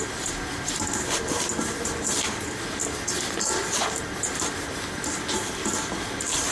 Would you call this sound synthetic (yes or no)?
yes